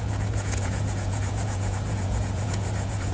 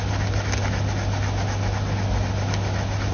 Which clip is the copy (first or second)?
first